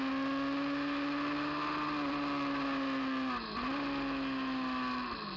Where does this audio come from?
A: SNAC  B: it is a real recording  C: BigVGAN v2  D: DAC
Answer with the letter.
B